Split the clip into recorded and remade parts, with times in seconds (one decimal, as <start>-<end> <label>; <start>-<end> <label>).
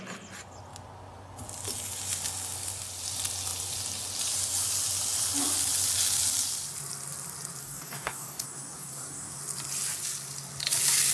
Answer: 0.0-7.6 recorded; 7.6-9.4 remade; 9.4-11.1 recorded